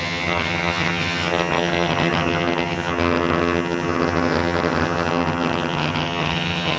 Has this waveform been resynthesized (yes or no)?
yes